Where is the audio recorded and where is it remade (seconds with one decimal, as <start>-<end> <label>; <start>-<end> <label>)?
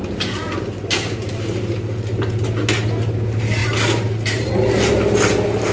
0.0-3.6 recorded; 3.6-4.5 remade; 4.5-5.7 recorded